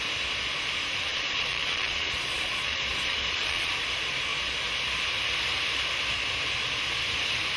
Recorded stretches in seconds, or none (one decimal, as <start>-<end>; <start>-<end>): 0.0-1.1; 3.7-7.6